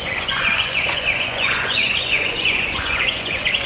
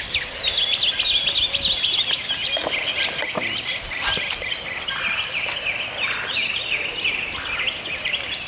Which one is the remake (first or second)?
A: first